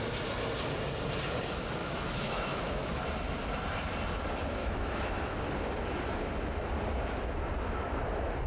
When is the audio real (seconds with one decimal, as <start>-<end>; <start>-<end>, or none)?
0.0-1.8; 2.9-4.6; 5.4-8.5